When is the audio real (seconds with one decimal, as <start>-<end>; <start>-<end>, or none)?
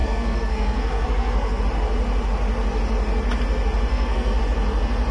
1.6-3.9; 4.4-5.1